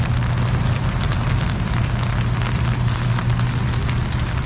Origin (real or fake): real